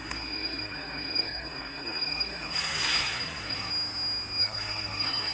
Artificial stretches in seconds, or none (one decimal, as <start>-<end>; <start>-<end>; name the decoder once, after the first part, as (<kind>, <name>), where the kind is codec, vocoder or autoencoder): 0.0-3.7 (codec, SNAC); 4.4-5.3